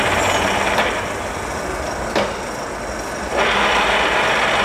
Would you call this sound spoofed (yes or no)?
no